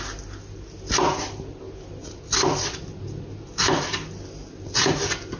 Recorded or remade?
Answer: recorded